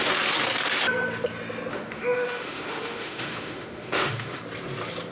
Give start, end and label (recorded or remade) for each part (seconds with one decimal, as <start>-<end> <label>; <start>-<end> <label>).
0.0-1.7 recorded; 1.7-4.4 remade; 4.4-5.1 recorded